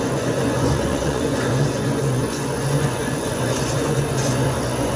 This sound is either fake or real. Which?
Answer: fake